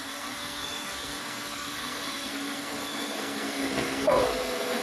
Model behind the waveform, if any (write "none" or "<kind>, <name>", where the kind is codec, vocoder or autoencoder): codec, SNAC